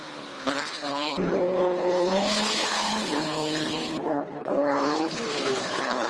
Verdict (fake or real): fake